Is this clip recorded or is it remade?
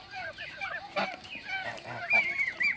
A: remade